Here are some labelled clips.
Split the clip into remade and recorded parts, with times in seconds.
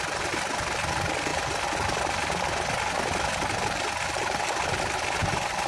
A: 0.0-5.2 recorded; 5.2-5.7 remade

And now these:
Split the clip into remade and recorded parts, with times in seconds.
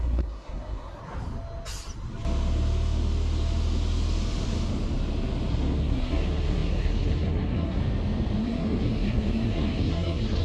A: 0.0-1.0 remade; 1.0-5.5 recorded; 5.5-7.8 remade; 7.8-8.4 recorded; 8.4-10.4 remade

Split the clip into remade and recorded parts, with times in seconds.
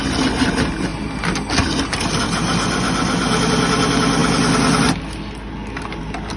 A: 0.0-6.4 recorded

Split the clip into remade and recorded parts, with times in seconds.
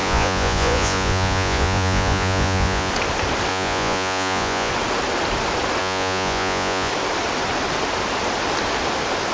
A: 0.0-2.9 remade; 2.9-3.5 recorded; 3.5-4.7 remade; 4.7-5.8 recorded; 5.8-6.9 remade; 6.9-9.3 recorded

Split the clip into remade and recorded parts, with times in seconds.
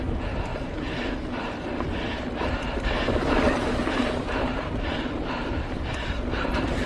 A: 0.0-0.5 remade; 0.5-2.5 recorded; 2.5-6.9 remade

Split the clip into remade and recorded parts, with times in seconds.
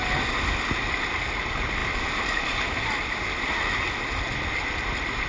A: 0.0-5.3 recorded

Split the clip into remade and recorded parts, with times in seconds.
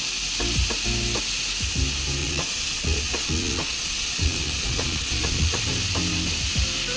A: 0.0-2.2 recorded; 2.2-5.6 remade; 5.6-7.0 recorded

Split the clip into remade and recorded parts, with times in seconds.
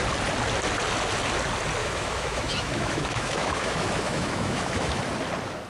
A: 0.0-1.8 recorded; 1.8-5.0 remade; 5.0-5.7 recorded